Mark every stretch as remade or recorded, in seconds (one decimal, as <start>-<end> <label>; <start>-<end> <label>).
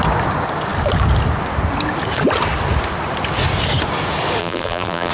0.0-4.4 recorded; 4.4-5.1 remade